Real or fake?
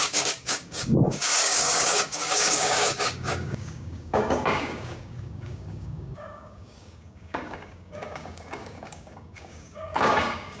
fake